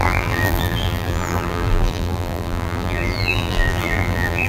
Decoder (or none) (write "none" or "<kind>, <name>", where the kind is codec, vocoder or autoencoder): vocoder, BigVGAN v2